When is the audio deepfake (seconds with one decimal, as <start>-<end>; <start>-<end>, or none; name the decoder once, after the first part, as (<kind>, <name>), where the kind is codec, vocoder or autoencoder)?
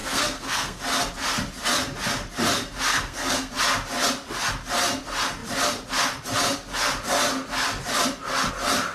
0.0-0.8 (codec, SNAC); 2.9-3.5